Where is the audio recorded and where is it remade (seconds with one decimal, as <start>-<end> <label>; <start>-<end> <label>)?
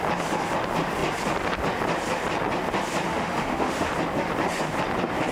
0.0-3.1 recorded; 3.1-3.9 remade; 3.9-5.3 recorded